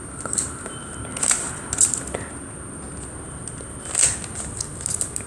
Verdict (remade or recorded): recorded